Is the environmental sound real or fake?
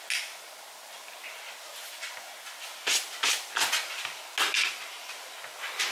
real